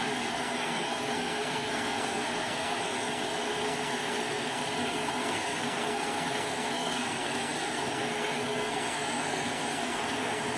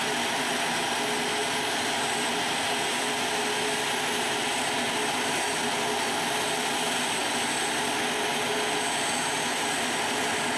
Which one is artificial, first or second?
first